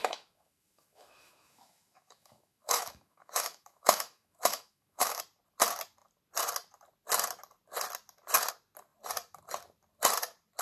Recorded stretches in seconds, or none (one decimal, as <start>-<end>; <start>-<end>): 5.2-10.6